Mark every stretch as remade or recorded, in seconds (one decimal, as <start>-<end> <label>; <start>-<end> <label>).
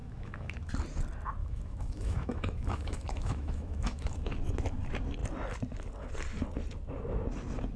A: 0.0-0.7 remade; 0.7-1.4 recorded; 1.4-4.3 remade; 4.3-7.8 recorded